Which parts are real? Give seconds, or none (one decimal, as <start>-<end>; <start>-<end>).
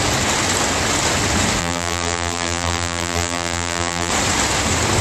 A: 0.0-1.6; 4.1-5.0